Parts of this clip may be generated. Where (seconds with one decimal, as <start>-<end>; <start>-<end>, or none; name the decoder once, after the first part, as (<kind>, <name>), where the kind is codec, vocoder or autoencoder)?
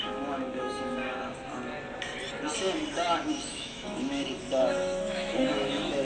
0.0-1.2 (autoencoder, DAC-VAE); 3.2-6.0